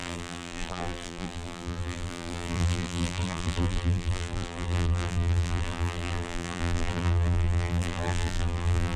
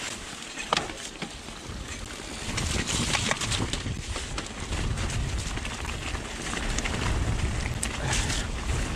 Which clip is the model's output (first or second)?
first